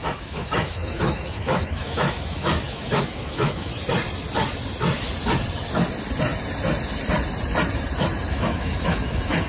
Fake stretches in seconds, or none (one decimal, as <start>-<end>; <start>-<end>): 0.0-3.7; 8.3-9.5